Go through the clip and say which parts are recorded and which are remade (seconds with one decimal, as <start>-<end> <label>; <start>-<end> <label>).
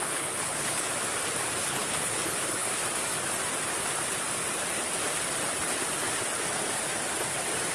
0.0-0.9 remade; 0.9-1.6 recorded; 1.6-2.8 remade; 2.8-7.7 recorded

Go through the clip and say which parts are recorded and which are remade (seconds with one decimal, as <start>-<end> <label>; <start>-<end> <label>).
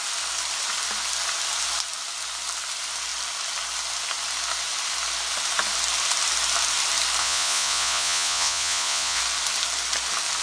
0.0-7.2 recorded; 7.2-9.2 remade; 9.2-10.4 recorded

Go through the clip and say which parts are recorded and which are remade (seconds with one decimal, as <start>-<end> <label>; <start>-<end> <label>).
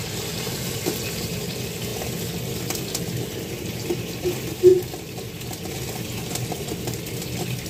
0.0-7.7 recorded